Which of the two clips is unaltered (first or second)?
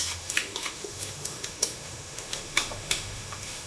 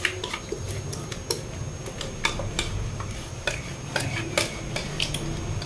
second